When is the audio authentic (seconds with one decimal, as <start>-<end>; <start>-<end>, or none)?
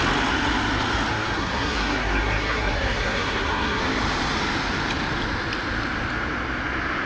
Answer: 0.0-1.1; 3.8-7.1